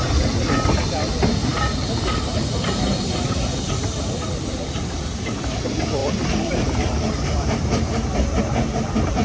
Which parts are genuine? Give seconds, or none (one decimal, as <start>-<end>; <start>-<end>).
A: 0.0-1.5; 5.0-6.0; 8.4-9.2